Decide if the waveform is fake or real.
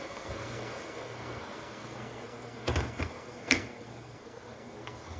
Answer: fake